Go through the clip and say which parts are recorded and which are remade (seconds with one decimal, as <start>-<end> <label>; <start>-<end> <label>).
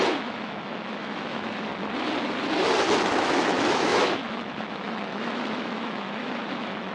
0.0-1.7 remade; 1.7-3.0 recorded; 3.0-6.9 remade